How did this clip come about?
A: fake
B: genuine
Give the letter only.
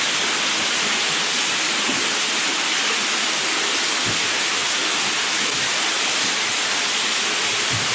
B